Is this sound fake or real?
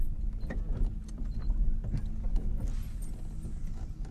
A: real